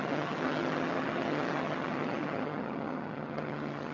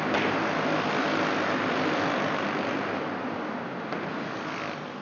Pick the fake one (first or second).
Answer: first